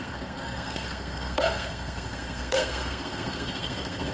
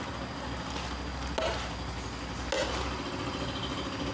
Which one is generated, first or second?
first